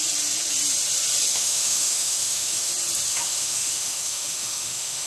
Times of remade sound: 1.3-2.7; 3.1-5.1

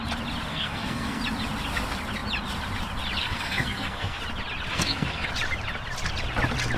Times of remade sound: 0.5-1.2; 3.2-4.2; 4.7-5.3

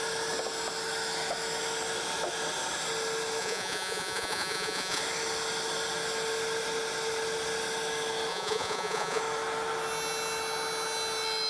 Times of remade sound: 3.4-5.0; 8.3-9.2